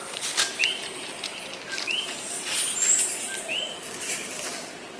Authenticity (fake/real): real